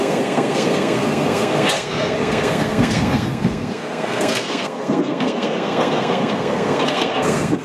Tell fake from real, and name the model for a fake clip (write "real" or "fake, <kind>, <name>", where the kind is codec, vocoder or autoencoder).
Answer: fake, codec, SNAC